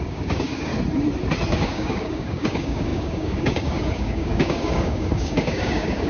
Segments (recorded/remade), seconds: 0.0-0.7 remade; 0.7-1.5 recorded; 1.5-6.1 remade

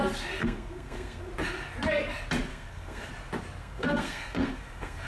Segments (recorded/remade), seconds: 0.0-0.4 recorded; 0.4-1.3 remade; 1.3-2.5 recorded; 2.5-3.1 remade; 3.1-3.6 recorded; 3.6-5.1 remade

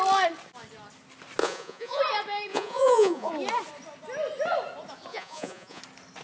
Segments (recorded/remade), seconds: 0.0-1.4 recorded; 1.4-2.0 remade; 2.0-2.5 recorded; 2.5-3.3 remade; 3.3-5.1 recorded; 5.1-5.8 remade; 5.8-6.2 recorded

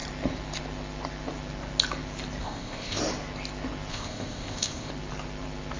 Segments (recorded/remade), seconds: 0.0-2.4 recorded; 2.4-3.0 remade; 3.0-3.9 recorded; 3.9-4.9 remade; 4.9-5.8 recorded